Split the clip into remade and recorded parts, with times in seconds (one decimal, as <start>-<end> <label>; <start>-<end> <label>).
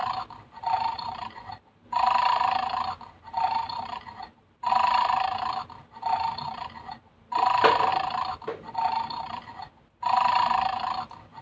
0.0-4.7 remade; 4.7-7.9 recorded; 7.9-9.5 remade; 9.5-11.4 recorded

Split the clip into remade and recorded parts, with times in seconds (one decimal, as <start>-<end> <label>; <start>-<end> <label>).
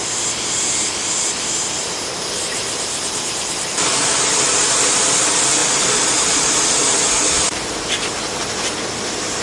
0.0-3.8 remade; 3.8-5.6 recorded; 5.6-6.4 remade; 6.4-9.4 recorded